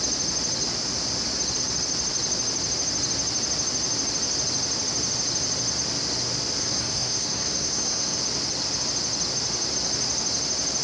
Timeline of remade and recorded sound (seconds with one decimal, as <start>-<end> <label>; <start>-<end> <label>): 0.0-6.6 recorded; 6.6-8.2 remade; 8.2-10.8 recorded